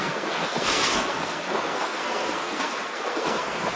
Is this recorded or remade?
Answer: remade